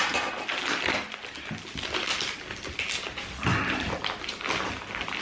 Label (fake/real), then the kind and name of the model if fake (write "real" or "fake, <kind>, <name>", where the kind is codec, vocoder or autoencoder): real